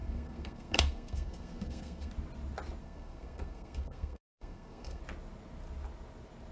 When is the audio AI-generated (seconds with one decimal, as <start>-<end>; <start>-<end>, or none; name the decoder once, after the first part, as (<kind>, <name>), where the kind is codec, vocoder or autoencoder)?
0.0-2.1 (codec, SNAC); 2.8-5.0